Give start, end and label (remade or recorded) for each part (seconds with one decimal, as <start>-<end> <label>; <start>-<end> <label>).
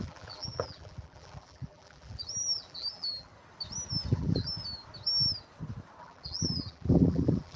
0.0-3.3 remade; 3.3-4.1 recorded; 4.1-4.5 remade; 4.5-6.0 recorded; 6.0-7.6 remade